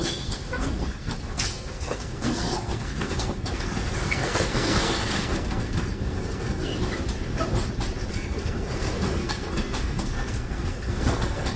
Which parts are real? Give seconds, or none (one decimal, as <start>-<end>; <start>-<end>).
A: 6.7-8.1